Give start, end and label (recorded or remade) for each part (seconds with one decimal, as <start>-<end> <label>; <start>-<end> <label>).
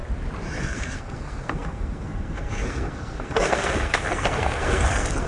0.0-0.6 recorded; 0.6-5.3 remade